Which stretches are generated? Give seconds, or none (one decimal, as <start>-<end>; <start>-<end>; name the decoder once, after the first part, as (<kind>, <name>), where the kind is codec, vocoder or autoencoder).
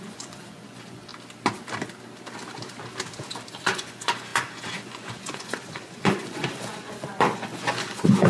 0.0-1.1 (vocoder, Vocos); 3.5-8.3